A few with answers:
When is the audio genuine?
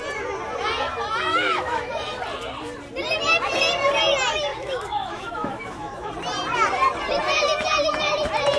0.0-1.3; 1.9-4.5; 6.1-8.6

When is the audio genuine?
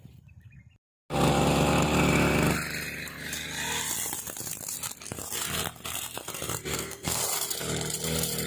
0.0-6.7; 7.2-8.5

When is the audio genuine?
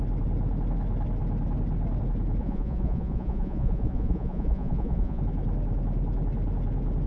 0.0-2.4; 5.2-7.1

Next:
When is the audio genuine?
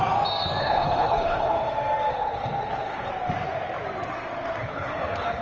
0.0-0.6; 1.7-2.1; 3.1-4.6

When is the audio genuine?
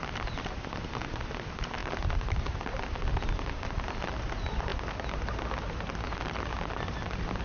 4.7-5.7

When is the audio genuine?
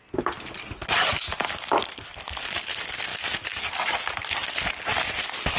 0.0-5.6